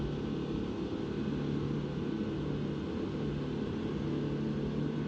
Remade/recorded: recorded